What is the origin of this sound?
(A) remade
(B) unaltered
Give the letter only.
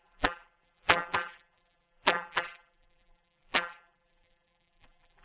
A